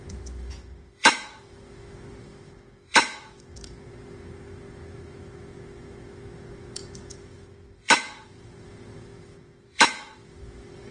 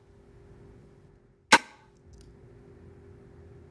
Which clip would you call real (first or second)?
second